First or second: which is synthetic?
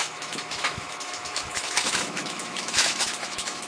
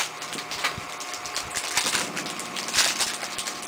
first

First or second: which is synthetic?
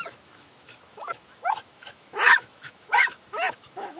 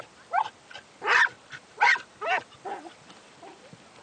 first